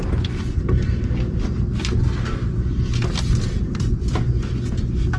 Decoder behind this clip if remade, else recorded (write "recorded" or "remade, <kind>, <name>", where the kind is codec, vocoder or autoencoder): recorded